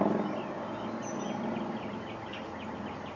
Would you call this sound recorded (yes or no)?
yes